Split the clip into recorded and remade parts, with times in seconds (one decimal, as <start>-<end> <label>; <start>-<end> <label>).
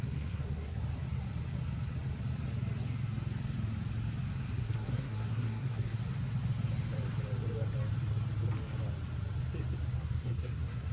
0.0-0.8 remade; 0.8-4.6 recorded; 4.6-6.0 remade; 6.0-10.0 recorded; 10.0-10.9 remade